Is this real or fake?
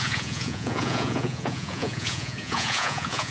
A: fake